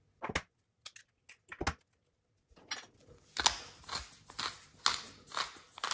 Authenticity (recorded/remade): recorded